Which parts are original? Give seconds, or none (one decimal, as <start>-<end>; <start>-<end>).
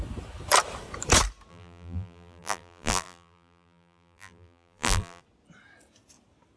0.0-1.5; 5.2-6.6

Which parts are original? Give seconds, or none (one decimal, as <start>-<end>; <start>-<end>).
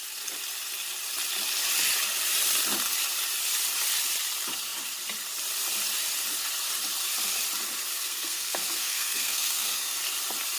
0.0-7.9; 10.0-10.6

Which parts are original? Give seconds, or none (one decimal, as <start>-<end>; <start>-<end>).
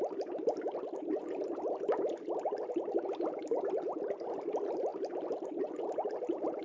0.0-6.6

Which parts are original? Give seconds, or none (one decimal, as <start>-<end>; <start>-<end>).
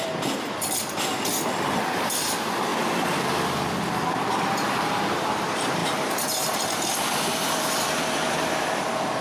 2.7-5.2